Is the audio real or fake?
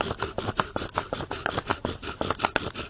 real